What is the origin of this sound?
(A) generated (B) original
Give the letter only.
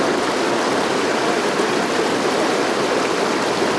B